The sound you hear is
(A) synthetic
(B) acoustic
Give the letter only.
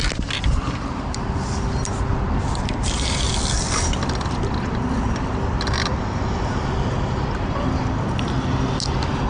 B